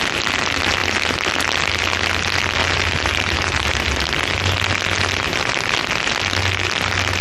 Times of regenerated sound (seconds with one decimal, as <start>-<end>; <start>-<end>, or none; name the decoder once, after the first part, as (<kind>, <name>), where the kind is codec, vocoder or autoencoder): 2.6-3.8 (vocoder, BigVGAN v2)